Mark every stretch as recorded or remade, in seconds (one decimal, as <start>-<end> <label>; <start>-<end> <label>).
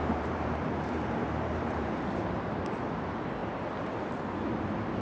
0.0-2.0 remade; 2.0-5.0 recorded